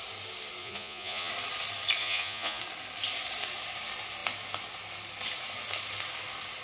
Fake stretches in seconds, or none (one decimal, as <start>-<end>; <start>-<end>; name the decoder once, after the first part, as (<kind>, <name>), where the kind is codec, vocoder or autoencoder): 0.6-1.3 (vocoder, Vocos); 2.0-2.6